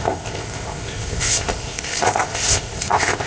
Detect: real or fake fake